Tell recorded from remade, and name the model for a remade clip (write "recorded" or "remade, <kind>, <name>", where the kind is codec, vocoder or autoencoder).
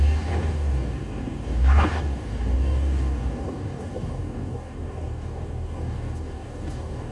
remade, codec, DAC